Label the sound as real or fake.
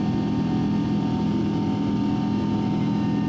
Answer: real